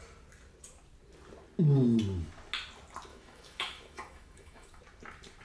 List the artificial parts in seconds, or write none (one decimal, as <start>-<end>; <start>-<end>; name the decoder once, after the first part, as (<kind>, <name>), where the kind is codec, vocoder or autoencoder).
3.1-4.8 (autoencoder, DAC-VAE)